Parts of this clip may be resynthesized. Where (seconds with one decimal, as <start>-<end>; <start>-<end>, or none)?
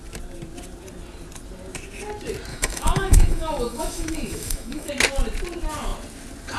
2.5-4.9